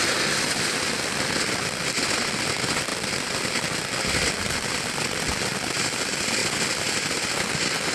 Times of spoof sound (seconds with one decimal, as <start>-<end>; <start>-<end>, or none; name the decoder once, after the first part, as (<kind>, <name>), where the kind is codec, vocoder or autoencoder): none